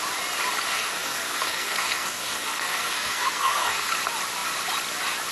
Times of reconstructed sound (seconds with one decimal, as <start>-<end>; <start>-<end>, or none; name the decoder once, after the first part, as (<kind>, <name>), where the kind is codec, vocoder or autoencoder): 0.7-3.9 (codec, SNAC)